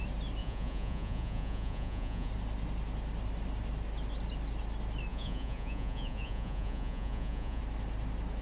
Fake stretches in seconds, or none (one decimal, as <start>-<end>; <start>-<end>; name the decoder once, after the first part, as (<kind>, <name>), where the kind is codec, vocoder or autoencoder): 0.4-2.3 (vocoder, Vocos); 5.1-7.6